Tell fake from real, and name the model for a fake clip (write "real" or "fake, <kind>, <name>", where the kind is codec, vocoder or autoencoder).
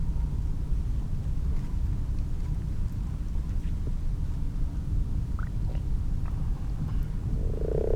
real